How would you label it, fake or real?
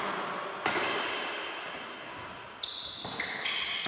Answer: real